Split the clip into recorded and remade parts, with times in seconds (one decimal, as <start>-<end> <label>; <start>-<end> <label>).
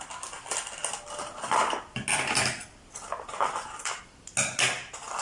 0.0-5.2 recorded